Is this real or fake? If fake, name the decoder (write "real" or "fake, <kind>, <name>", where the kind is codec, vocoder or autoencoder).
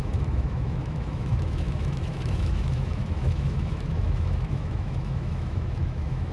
fake, autoencoder, DAC-VAE